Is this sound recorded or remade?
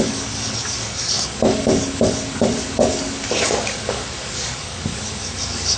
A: remade